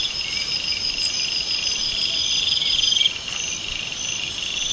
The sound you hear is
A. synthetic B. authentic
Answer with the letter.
A